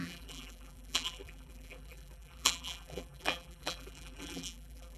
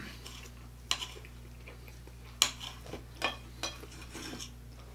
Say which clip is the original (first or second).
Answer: second